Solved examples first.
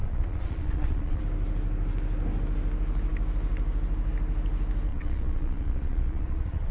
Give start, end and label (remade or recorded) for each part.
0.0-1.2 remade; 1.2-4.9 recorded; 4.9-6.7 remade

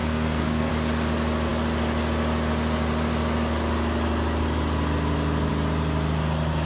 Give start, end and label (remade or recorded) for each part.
0.0-0.7 remade; 0.7-6.7 recorded

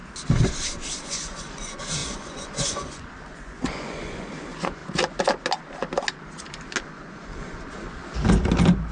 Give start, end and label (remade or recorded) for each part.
0.0-1.0 recorded; 1.0-4.8 remade; 4.8-6.9 recorded; 6.9-8.0 remade; 8.0-8.9 recorded

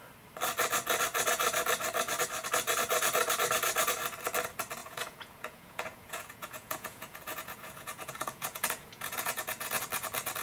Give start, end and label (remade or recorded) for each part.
0.0-4.8 recorded; 4.8-9.8 remade; 9.8-10.4 recorded